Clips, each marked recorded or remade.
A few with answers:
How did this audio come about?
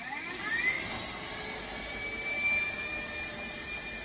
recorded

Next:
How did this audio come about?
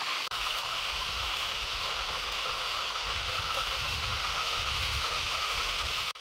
remade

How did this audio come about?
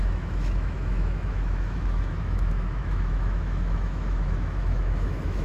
remade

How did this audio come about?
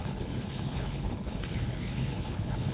remade